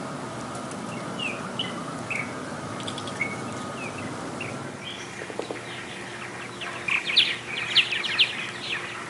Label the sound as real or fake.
real